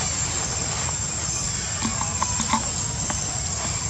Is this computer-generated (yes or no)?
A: no